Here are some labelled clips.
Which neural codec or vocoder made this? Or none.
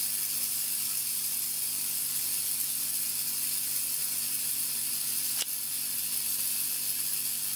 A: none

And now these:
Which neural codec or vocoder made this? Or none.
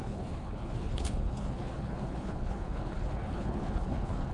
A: codec, HILCodec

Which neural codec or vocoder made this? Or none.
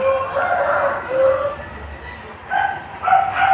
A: none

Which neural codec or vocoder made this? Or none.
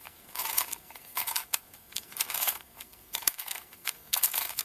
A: codec, SNAC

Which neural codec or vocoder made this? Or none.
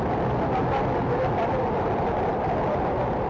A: none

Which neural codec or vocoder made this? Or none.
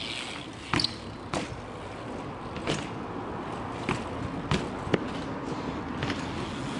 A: none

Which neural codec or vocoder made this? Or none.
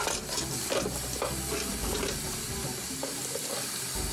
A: none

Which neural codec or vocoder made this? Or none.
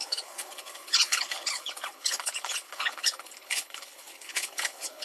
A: codec, HILCodec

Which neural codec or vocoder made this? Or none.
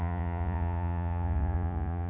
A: vocoder, Vocos